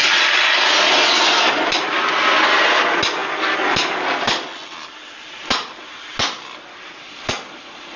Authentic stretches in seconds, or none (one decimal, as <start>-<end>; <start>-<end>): 2.4-8.0